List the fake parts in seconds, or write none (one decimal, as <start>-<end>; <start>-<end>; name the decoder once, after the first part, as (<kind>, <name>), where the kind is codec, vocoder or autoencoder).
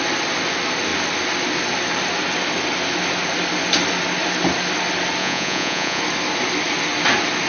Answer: 5.2-6.0 (vocoder, Vocos)